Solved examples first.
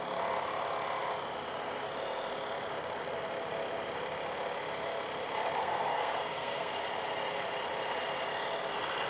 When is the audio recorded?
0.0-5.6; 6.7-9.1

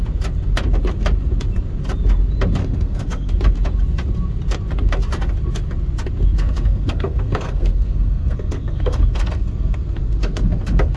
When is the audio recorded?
0.0-2.6; 3.3-6.3